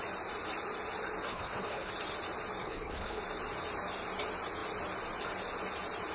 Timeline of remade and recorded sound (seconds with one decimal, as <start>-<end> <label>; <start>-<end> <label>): 0.0-1.3 recorded; 1.3-1.9 remade; 1.9-2.6 recorded; 2.6-3.2 remade; 3.2-6.1 recorded